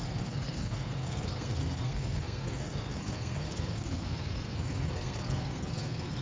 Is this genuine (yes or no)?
no